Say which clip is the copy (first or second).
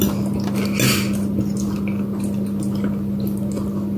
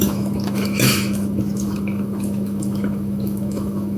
second